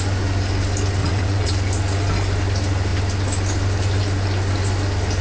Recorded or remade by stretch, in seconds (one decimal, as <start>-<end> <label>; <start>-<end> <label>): 0.0-1.0 recorded; 1.0-1.5 remade; 1.5-5.2 recorded